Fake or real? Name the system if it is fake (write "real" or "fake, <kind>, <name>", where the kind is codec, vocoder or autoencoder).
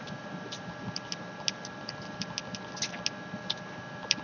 real